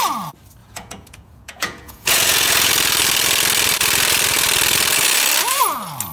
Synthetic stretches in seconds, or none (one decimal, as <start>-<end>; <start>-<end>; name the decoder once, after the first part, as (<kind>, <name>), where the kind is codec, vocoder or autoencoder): 0.6-2.7 (vocoder, Vocos)